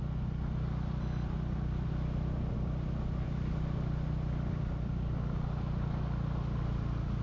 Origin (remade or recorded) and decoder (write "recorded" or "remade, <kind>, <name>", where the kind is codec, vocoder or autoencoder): recorded